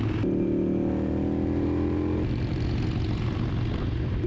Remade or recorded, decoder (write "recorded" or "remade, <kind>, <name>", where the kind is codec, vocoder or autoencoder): recorded